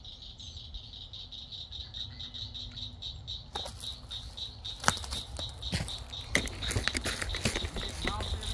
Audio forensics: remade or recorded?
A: recorded